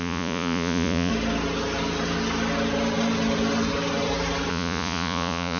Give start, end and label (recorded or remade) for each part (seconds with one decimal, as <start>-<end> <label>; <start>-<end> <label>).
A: 0.0-1.1 remade; 1.1-4.5 recorded; 4.5-5.6 remade